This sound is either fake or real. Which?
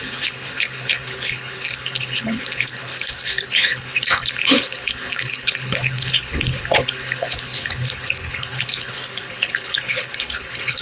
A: fake